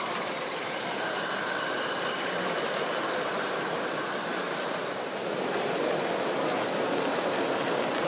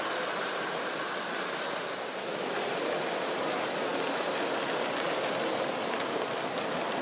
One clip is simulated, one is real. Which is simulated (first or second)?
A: first